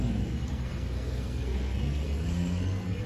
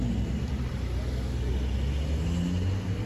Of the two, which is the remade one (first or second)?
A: first